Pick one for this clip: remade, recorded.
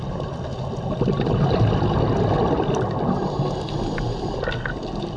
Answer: recorded